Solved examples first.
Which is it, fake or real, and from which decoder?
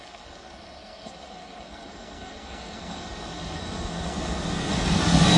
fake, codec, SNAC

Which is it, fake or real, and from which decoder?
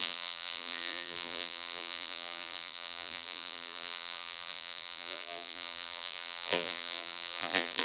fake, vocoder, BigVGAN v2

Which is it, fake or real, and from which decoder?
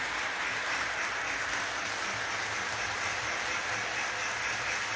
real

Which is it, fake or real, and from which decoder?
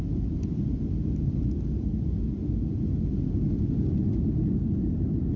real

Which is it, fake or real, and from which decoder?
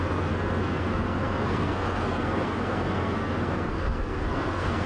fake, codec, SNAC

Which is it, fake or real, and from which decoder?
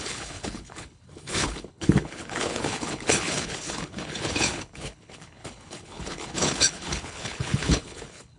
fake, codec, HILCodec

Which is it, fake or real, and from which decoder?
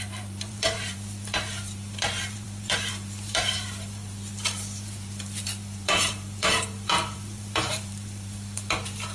fake, vocoder, BigVGAN v2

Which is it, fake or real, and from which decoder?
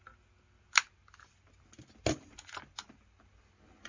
real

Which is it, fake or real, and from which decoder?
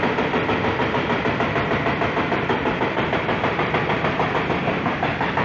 fake, vocoder, BigVGAN v2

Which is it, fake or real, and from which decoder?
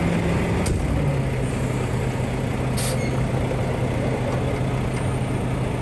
real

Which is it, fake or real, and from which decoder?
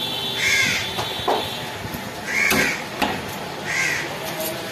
real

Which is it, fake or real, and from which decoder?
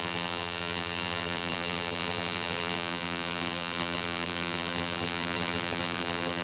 fake, vocoder, BigVGAN v2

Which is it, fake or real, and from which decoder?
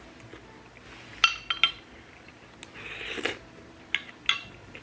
real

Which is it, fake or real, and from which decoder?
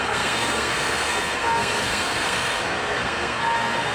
fake, codec, SNAC